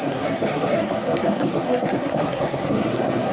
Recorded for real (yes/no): no